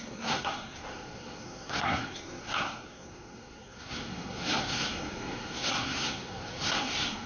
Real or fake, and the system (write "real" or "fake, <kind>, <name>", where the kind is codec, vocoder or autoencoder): fake, codec, SNAC